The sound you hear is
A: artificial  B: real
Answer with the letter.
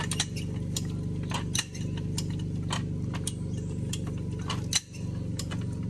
B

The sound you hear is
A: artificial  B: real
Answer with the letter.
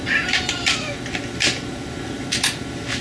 B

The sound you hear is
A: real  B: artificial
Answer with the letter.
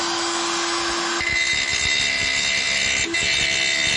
A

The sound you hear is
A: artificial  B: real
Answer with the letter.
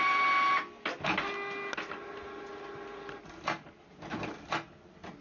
B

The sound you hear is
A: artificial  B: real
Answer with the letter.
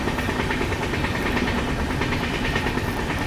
B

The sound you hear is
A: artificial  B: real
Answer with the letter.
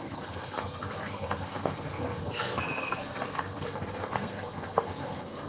A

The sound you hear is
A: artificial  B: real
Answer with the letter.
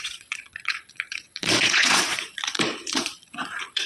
A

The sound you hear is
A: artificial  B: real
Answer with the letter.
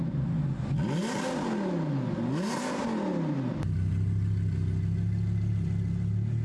B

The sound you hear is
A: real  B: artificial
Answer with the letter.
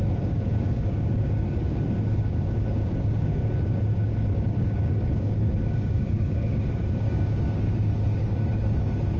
B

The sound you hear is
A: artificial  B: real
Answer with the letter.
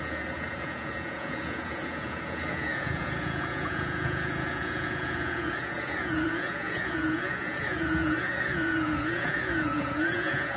A